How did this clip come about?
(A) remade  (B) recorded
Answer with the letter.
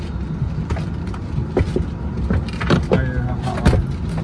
B